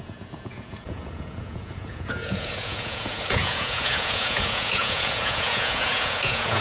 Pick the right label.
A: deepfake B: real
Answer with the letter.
A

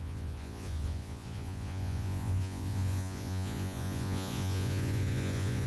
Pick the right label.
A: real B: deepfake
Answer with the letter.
B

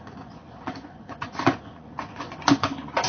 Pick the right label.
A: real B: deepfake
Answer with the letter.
B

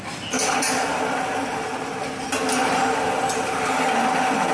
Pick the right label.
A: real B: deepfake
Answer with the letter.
A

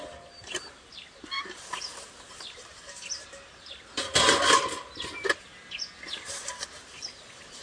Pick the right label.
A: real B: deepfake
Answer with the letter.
A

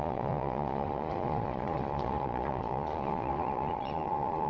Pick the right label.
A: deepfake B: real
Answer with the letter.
A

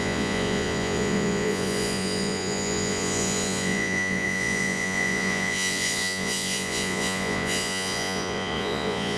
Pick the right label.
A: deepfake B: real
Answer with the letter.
A